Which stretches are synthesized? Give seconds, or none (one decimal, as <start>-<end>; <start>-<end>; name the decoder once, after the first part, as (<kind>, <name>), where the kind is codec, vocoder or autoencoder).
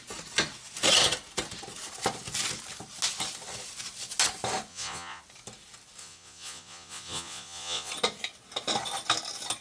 4.7-5.2 (vocoder, Vocos); 6.0-7.9